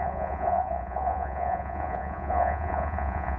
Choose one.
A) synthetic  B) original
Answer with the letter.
A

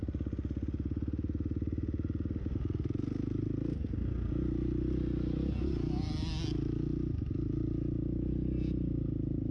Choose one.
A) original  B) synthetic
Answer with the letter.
A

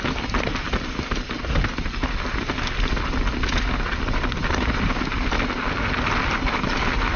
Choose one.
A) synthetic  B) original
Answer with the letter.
B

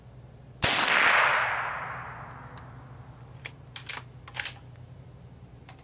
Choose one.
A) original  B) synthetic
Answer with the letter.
A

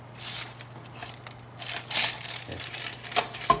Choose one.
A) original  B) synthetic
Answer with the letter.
A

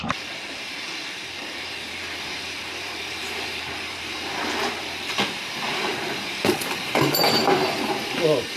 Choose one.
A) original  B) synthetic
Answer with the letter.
B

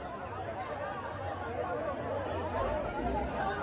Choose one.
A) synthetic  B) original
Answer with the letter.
B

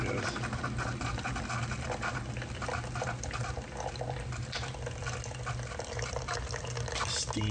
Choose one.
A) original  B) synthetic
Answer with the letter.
A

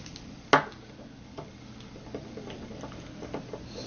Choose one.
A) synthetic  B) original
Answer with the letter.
B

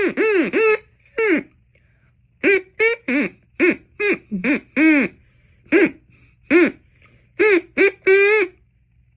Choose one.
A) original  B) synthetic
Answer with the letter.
A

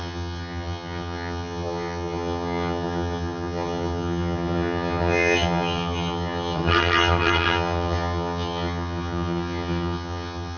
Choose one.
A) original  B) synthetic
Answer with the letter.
B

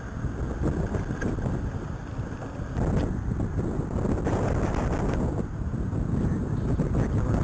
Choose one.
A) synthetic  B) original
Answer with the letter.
B